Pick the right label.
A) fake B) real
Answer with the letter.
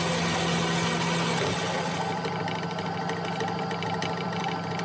B